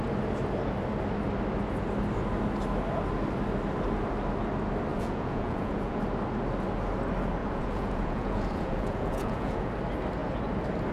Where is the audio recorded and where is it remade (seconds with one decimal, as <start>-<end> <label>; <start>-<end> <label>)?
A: 0.0-4.9 recorded; 4.9-6.0 remade; 6.0-7.4 recorded; 7.4-9.7 remade; 9.7-10.9 recorded